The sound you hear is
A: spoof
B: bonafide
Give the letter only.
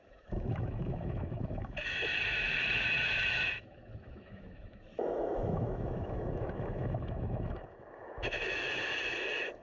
A